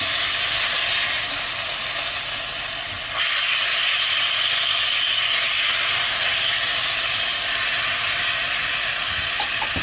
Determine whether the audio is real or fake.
real